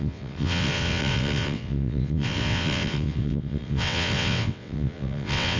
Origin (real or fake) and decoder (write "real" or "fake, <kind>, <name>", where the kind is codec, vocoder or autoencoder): fake, vocoder, WaveNeXt